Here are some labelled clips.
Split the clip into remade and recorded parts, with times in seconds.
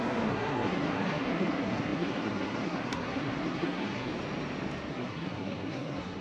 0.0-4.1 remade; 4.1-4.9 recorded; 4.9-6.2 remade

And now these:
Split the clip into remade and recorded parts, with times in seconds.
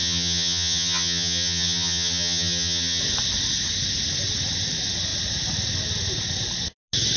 0.0-3.0 remade; 3.0-7.2 recorded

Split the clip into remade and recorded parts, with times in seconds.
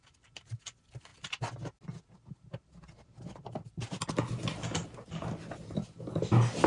0.0-6.7 recorded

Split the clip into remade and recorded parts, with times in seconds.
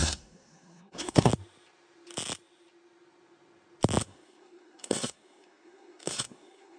0.0-1.3 remade; 1.3-4.0 recorded; 4.0-6.8 remade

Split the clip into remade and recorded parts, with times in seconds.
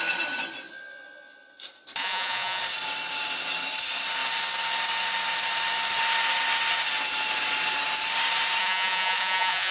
0.0-2.0 recorded; 2.0-2.6 remade; 2.6-8.6 recorded; 8.6-9.7 remade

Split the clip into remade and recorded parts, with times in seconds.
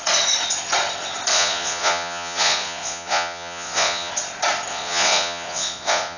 0.0-1.3 recorded; 1.3-4.1 remade; 4.1-4.7 recorded; 4.7-6.2 remade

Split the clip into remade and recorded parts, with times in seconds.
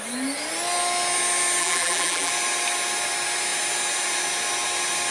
0.0-1.6 recorded; 1.6-2.3 remade; 2.3-5.1 recorded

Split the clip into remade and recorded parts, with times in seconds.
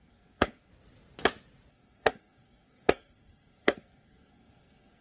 0.0-0.7 remade; 0.7-1.7 recorded; 1.7-5.0 remade